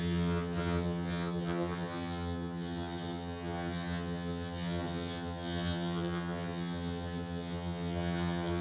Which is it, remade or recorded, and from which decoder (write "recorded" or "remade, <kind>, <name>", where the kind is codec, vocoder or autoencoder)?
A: remade, vocoder, HiFi-GAN